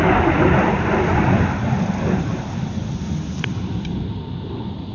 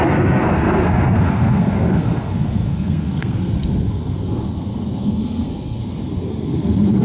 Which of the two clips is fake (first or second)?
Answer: second